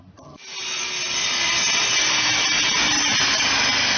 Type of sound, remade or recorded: recorded